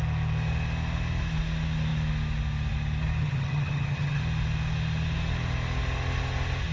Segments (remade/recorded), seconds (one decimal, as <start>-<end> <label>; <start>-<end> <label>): 0.0-3.2 recorded; 3.2-4.2 remade; 4.2-6.7 recorded